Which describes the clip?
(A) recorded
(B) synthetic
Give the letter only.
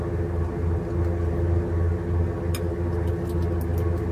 A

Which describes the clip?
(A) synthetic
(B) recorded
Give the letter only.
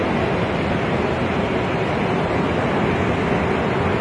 B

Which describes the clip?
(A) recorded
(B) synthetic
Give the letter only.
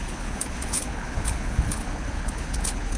B